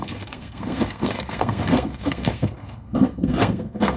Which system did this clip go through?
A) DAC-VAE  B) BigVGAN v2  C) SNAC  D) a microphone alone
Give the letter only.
C